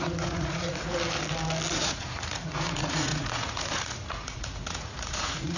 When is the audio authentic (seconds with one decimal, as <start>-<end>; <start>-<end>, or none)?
0.9-1.7